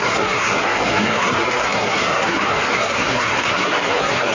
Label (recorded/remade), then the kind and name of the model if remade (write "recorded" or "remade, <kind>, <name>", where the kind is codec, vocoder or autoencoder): remade, codec, SNAC